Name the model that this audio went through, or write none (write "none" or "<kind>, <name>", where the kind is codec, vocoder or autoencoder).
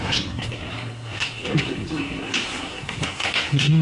codec, SNAC